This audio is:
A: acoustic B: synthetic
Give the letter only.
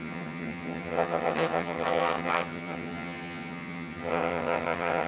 B